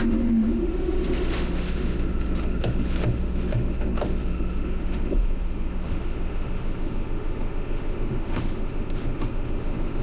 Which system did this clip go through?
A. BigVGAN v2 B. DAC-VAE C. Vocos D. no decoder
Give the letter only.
B